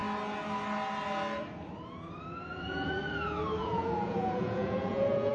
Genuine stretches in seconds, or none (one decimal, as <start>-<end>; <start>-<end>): 0.0-2.5; 3.0-3.6